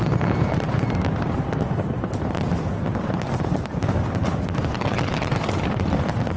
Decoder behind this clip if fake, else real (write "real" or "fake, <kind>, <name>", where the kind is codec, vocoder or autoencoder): real